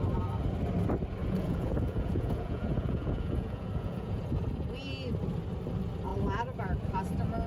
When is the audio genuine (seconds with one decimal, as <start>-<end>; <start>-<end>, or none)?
0.0-1.2; 4.2-7.5